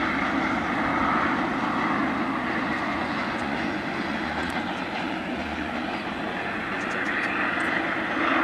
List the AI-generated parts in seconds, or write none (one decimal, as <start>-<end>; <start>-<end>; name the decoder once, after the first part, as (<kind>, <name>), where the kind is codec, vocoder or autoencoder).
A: 2.7-7.2 (vocoder, Vocos)